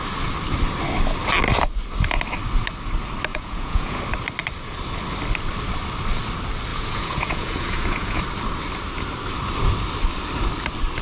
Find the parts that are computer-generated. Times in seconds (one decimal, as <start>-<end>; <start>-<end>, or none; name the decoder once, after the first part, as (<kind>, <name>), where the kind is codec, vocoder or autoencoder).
3.3-4.0 (vocoder, Vocos); 6.7-8.2